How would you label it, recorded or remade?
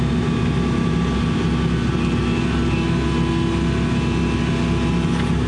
recorded